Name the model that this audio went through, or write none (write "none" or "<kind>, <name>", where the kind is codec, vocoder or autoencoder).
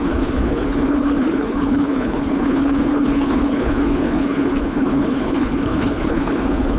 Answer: codec, HILCodec